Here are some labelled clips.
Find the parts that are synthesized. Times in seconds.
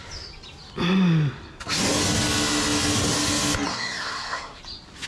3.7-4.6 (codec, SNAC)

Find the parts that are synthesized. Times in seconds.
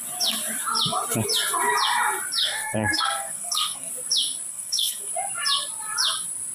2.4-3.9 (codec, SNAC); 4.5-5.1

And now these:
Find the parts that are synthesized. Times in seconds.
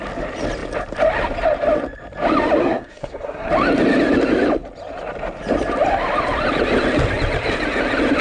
2.6-3.5 (codec, SNAC)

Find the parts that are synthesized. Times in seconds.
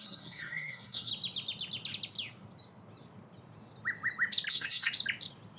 0.0-1.1 (codec, SNAC); 4.5-4.9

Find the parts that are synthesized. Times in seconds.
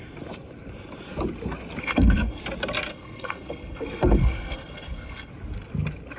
1.8-2.4 (codec, SNAC); 2.9-5.3